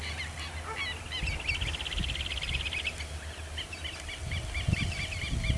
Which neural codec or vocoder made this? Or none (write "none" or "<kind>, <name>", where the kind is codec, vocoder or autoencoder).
none